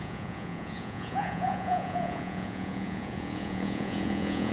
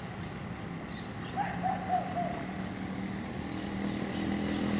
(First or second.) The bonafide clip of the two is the second